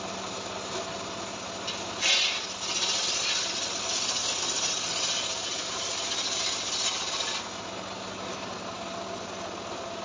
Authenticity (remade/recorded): recorded